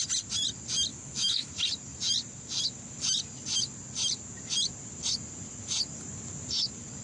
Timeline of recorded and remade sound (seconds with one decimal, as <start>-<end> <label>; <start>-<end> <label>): 0.0-0.9 recorded; 0.9-1.5 remade; 1.5-7.0 recorded